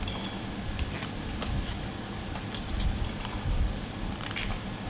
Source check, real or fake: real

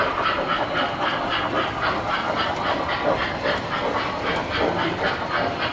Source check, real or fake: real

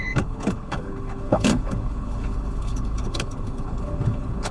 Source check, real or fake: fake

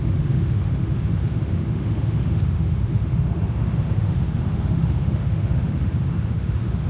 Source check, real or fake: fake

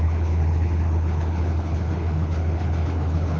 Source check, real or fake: fake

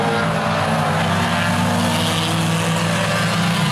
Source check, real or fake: real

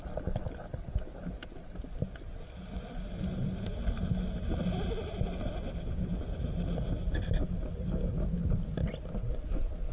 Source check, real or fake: real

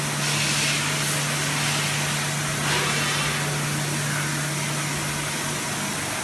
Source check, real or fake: real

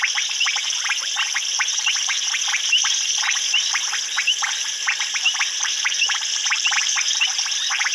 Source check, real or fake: fake